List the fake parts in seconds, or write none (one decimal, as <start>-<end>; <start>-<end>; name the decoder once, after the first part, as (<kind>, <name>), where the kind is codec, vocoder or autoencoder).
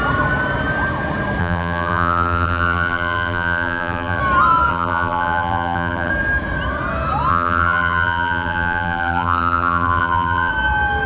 1.4-4.2 (vocoder, BigVGAN v2); 4.7-6.1; 7.3-10.5